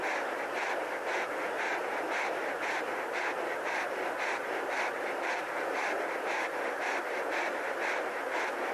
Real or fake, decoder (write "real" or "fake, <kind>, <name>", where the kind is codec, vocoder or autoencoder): real